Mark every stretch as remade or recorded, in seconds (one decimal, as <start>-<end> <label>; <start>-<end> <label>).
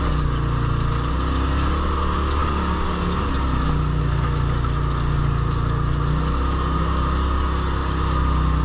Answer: 0.0-8.6 recorded